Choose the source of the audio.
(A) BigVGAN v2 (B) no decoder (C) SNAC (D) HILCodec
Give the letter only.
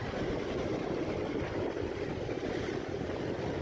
B